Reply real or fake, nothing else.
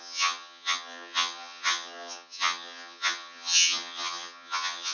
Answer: fake